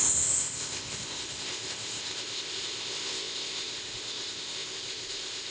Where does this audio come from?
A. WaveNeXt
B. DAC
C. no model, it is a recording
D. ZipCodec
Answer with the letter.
D